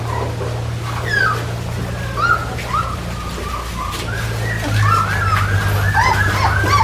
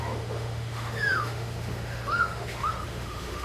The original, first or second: first